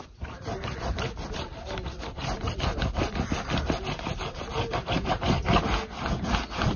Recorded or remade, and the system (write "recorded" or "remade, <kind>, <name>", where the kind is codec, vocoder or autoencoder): recorded